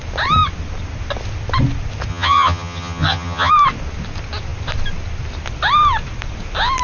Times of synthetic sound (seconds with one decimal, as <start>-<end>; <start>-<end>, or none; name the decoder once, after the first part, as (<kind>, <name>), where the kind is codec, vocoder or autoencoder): 2.1-3.5 (vocoder, HiFi-GAN)